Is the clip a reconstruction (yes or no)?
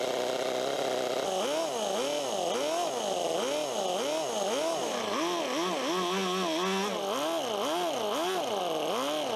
no